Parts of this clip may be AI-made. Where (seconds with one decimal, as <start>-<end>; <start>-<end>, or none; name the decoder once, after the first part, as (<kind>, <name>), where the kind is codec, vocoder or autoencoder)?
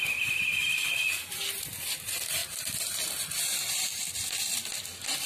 none